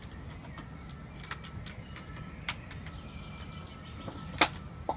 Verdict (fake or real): real